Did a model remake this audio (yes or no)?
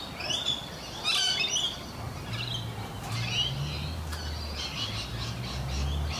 no